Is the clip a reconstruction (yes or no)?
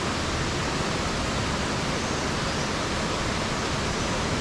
no